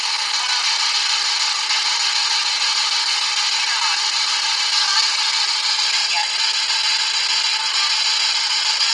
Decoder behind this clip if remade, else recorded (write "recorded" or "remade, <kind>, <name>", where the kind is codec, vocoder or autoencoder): recorded